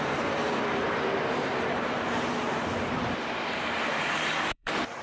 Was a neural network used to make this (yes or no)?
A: yes